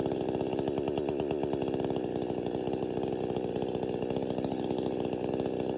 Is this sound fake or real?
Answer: real